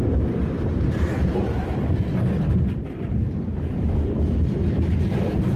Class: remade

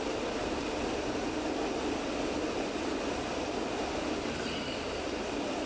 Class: remade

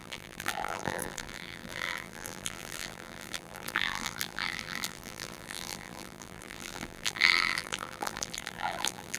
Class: remade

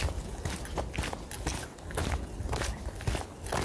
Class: recorded